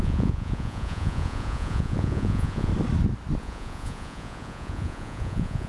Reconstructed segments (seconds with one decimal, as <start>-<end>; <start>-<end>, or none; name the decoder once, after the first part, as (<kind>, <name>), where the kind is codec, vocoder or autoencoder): 0.0-2.7 (vocoder, Vocos); 3.4-5.7